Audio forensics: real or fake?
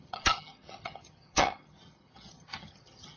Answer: fake